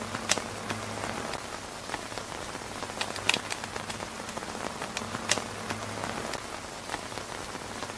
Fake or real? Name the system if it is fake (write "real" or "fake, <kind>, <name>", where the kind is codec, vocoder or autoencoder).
real